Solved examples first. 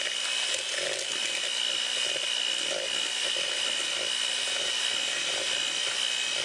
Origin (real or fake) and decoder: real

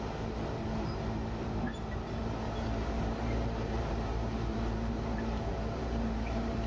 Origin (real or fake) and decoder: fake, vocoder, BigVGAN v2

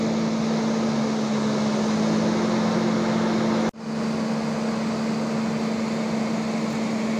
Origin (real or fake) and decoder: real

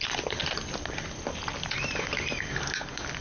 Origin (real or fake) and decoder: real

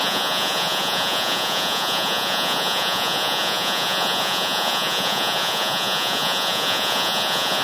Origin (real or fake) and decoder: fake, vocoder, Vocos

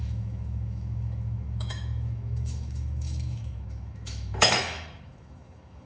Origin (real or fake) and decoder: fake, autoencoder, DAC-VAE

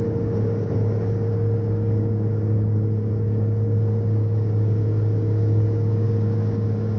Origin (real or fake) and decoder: fake, codec, DAC